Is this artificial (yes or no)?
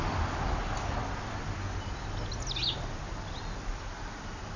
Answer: no